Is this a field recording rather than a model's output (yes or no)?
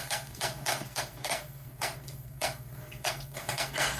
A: no